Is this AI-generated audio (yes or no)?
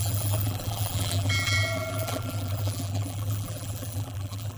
yes